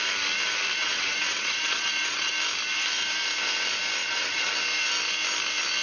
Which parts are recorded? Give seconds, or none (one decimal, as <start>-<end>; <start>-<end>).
0.0-0.8; 2.3-4.0; 4.5-5.8